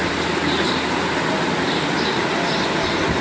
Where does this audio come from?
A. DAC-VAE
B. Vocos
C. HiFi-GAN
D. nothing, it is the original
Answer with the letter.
D